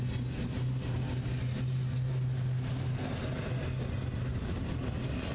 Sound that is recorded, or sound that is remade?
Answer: recorded